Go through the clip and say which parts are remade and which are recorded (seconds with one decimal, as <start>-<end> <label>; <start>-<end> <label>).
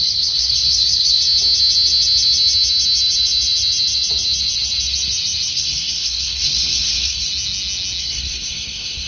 0.0-1.2 remade; 1.2-5.5 recorded; 5.5-7.3 remade; 7.3-8.0 recorded; 8.0-9.1 remade